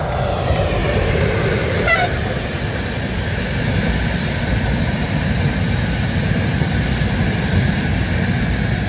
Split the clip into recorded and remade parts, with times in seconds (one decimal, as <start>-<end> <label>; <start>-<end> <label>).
0.0-0.8 recorded; 0.8-3.0 remade; 3.0-8.9 recorded